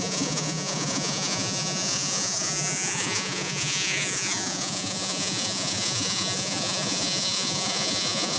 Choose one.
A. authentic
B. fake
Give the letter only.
B